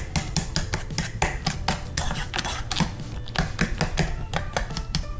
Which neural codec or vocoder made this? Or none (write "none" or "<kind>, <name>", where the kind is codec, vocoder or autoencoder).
none